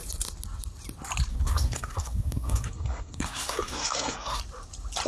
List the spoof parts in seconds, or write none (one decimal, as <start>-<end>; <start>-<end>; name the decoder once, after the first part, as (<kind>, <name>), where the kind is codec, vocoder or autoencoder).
1.3-4.4 (codec, SNAC)